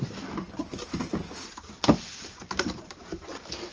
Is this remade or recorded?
recorded